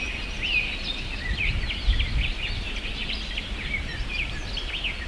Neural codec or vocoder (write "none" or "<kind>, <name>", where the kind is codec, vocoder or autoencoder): none